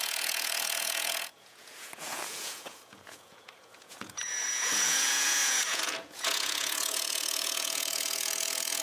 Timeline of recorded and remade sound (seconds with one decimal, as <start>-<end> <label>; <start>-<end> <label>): 0.0-8.8 remade

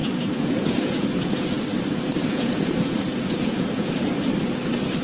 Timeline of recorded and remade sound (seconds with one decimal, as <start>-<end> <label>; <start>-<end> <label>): 0.0-1.6 remade; 1.6-2.2 recorded; 2.2-4.0 remade; 4.0-5.0 recorded

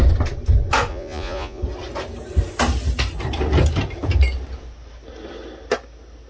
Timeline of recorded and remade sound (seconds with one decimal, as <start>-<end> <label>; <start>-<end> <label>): 0.0-0.9 recorded; 0.9-1.6 remade; 1.6-6.3 recorded

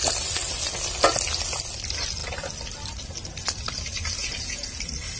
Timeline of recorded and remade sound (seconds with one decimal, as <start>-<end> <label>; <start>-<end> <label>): 0.0-4.2 recorded; 4.2-4.8 remade; 4.8-5.2 recorded

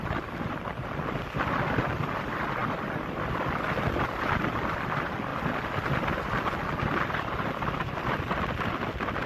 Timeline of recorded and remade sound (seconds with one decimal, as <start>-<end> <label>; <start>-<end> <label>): 0.0-9.3 recorded

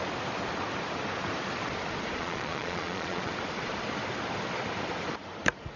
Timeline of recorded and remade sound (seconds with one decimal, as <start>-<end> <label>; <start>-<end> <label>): 0.0-2.2 recorded; 2.2-3.3 remade; 3.3-5.8 recorded

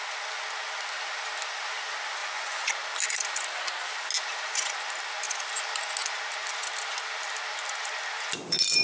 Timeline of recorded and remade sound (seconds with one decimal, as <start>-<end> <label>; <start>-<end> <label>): 0.0-2.2 recorded; 2.2-2.7 remade; 2.7-8.8 recorded